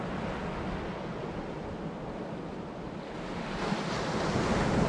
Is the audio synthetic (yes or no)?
no